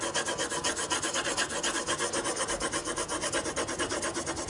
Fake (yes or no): no